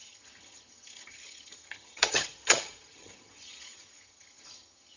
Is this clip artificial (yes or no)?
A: yes